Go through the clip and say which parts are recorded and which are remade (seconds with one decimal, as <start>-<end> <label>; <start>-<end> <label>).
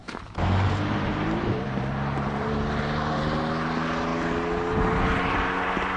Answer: 0.0-3.4 remade; 3.4-6.0 recorded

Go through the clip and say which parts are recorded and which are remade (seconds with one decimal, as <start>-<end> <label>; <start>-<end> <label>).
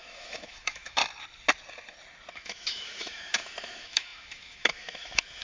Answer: 0.0-1.0 remade; 1.0-2.3 recorded; 2.3-5.4 remade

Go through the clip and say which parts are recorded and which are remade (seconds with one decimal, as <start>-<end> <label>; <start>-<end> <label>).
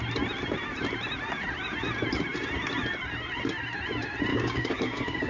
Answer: 0.0-4.3 recorded; 4.3-5.3 remade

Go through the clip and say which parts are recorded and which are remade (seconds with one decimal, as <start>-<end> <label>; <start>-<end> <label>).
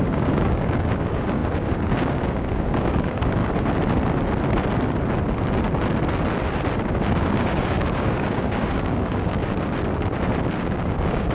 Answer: 0.0-3.4 remade; 3.4-6.9 recorded; 6.9-9.4 remade; 9.4-10.6 recorded; 10.6-11.3 remade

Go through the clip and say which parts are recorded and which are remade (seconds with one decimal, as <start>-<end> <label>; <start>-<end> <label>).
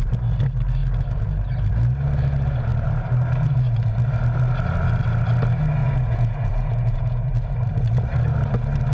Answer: 0.0-5.8 recorded; 5.8-7.3 remade; 7.3-8.9 recorded